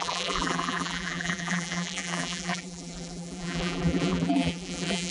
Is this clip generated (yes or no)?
yes